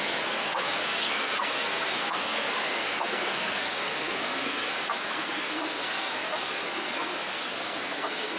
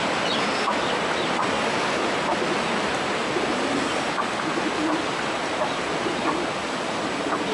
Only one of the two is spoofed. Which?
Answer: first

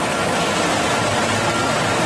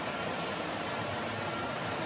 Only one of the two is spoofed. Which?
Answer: second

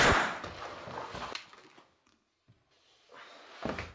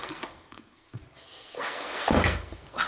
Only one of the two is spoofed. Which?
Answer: second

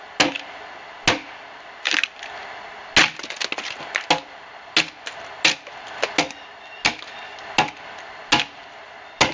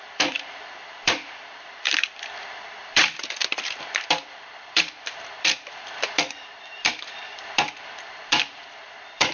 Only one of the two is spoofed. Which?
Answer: second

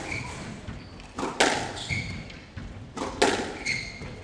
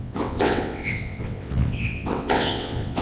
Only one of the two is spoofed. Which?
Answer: second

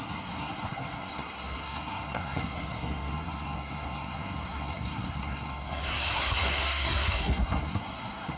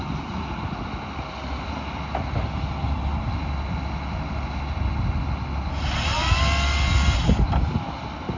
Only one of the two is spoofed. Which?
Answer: first